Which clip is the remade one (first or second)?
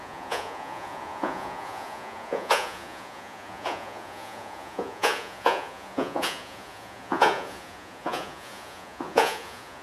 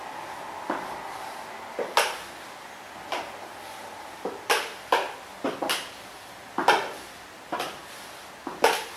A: first